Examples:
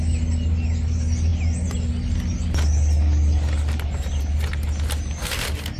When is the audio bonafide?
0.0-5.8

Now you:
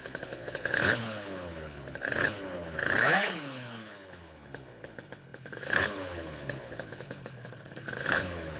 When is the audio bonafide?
none

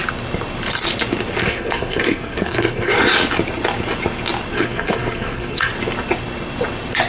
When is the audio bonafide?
0.0-1.4; 2.9-4.5; 5.7-7.1

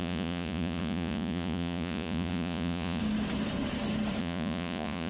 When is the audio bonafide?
3.0-4.2

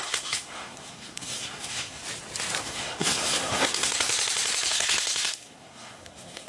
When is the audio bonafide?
2.0-2.6; 4.1-4.7

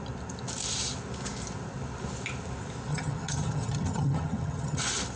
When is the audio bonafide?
0.0-2.9; 4.8-5.2

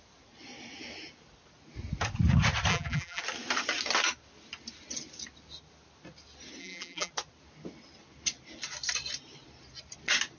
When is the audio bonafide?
0.0-2.7; 3.2-6.6; 7.1-10.4